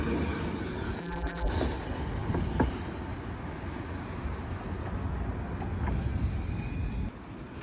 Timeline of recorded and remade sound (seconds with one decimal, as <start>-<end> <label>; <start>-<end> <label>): 0.0-1.0 recorded; 1.0-1.5 remade; 1.5-7.6 recorded